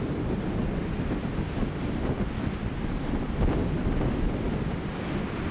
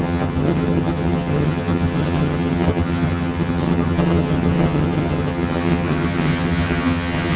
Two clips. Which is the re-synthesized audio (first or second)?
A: second